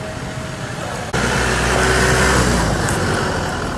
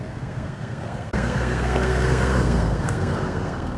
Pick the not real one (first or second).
second